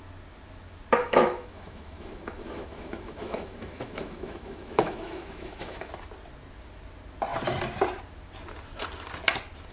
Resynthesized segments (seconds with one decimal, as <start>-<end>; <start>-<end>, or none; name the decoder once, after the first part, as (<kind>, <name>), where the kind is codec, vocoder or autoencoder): 1.0-5.9 (autoencoder, DAC-VAE)